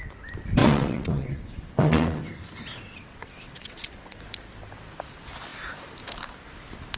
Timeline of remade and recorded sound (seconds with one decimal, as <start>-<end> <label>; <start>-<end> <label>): 0.0-0.6 recorded; 0.6-2.2 remade; 2.2-2.7 recorded; 2.7-4.2 remade; 4.2-7.0 recorded